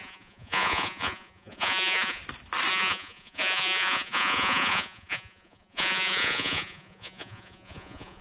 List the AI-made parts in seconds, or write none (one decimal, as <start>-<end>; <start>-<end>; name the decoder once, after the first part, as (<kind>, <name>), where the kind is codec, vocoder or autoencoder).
0.0-2.2 (vocoder, Vocos); 2.7-8.2